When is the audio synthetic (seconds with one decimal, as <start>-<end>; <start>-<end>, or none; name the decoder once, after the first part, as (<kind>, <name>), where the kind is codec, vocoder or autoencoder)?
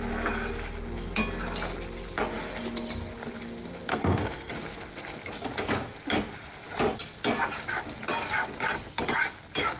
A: 3.9-4.5 (codec, SNAC)